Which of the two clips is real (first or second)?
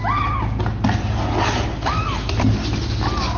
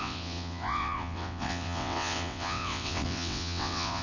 first